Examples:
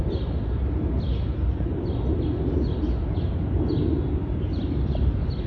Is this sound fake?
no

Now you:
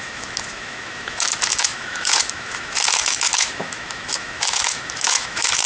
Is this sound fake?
yes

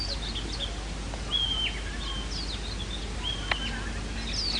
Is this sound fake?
no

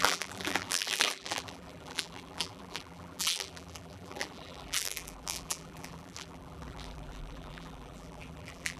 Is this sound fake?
yes